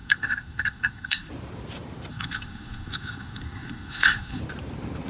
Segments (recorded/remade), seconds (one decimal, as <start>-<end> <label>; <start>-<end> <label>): 0.0-1.3 remade; 1.3-2.1 recorded; 2.1-4.4 remade; 4.4-5.1 recorded